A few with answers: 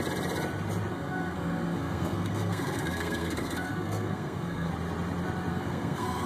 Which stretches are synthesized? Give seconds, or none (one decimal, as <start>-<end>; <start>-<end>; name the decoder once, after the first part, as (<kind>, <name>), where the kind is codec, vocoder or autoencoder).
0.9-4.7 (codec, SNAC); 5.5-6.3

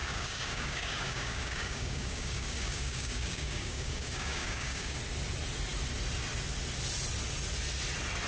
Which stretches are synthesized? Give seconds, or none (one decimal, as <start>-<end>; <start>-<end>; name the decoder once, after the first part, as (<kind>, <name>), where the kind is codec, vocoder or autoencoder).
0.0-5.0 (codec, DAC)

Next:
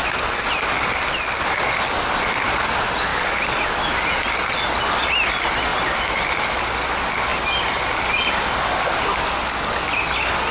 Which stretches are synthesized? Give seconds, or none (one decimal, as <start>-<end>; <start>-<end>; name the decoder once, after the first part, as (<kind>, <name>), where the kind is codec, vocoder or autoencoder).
none

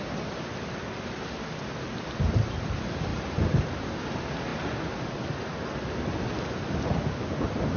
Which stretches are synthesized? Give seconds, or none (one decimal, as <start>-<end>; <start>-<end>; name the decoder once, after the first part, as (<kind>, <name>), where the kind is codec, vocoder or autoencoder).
3.1-3.9 (vocoder, BigVGAN v2)